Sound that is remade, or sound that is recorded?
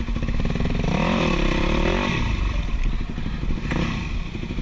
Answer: remade